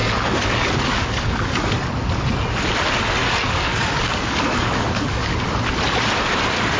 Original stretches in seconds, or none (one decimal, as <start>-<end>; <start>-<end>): 1.7-3.2; 5.5-6.8